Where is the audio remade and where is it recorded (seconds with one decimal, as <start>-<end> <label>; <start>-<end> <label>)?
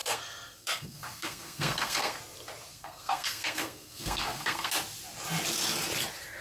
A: 0.0-2.2 remade; 2.2-2.7 recorded; 2.7-4.7 remade; 4.7-6.4 recorded